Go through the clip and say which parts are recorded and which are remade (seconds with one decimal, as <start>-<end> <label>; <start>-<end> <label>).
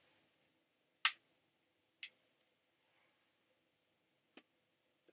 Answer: 0.0-5.1 recorded